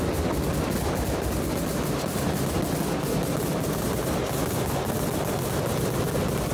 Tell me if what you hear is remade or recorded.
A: recorded